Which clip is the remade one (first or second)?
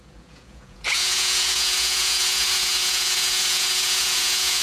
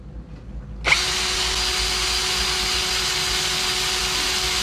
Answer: first